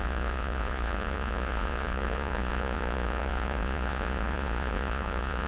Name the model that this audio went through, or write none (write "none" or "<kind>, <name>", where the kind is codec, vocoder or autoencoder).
vocoder, Vocos